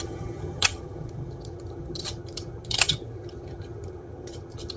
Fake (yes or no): yes